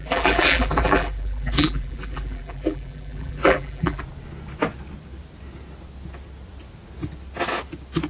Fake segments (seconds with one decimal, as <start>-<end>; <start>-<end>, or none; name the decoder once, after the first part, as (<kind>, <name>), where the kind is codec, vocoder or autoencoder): 0.0-4.0 (vocoder, BigVGAN v2)